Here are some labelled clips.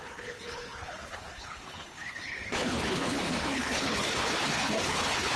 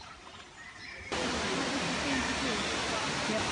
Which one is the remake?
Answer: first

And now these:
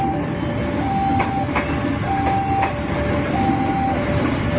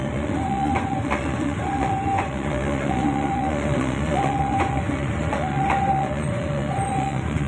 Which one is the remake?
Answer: second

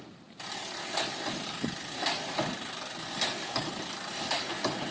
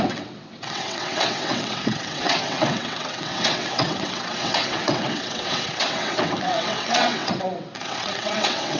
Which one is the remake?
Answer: second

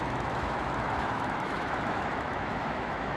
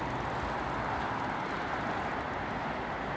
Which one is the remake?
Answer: first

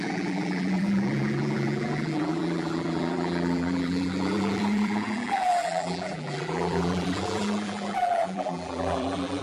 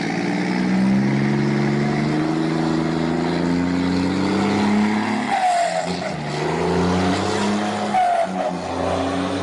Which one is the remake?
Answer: first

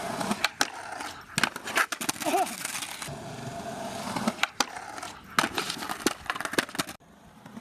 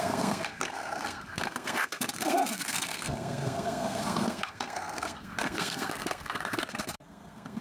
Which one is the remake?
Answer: second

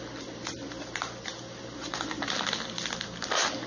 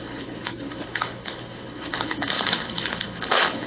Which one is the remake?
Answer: second